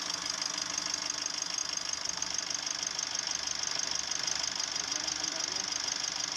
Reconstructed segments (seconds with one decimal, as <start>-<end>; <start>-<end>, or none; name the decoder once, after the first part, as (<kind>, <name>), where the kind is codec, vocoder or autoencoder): none